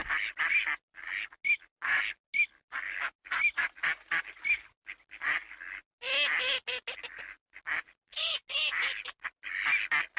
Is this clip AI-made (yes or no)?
no